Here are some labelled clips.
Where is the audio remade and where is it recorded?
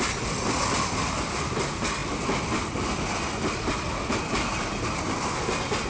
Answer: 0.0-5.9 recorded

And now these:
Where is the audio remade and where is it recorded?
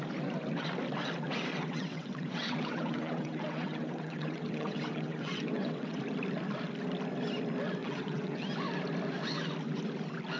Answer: 0.0-1.5 recorded; 1.5-6.0 remade; 6.0-7.8 recorded; 7.8-8.5 remade; 8.5-10.4 recorded